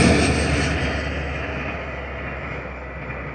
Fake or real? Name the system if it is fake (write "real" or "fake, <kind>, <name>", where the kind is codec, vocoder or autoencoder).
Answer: real